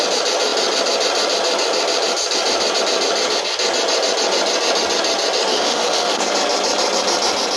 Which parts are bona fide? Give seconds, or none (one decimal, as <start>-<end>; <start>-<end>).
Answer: 0.0-5.5; 6.2-7.6